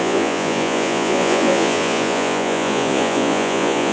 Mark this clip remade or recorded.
remade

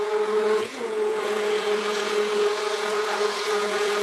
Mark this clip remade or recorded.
remade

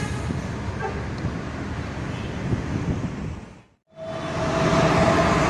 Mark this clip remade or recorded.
recorded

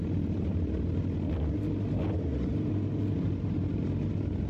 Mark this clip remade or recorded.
recorded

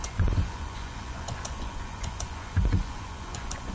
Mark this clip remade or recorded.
remade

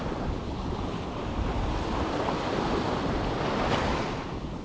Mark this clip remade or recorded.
recorded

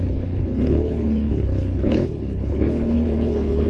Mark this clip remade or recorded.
remade